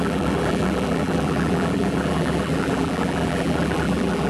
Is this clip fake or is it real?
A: fake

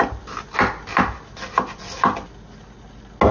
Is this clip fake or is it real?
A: real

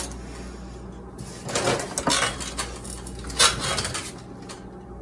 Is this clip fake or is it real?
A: real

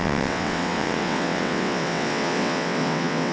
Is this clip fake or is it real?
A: fake